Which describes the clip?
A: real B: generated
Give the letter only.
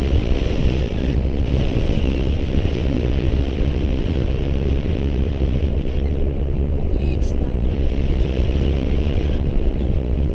B